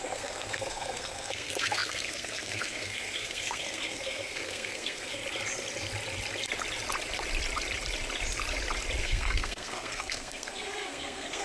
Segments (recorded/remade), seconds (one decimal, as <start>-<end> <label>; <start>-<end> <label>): 0.0-5.2 remade; 5.2-9.0 recorded; 9.0-11.4 remade